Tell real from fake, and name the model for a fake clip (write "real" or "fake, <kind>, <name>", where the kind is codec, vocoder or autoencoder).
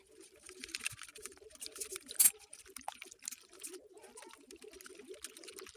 real